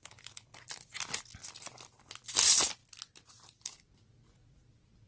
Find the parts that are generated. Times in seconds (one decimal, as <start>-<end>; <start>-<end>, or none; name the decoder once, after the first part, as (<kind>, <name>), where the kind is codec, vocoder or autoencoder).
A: none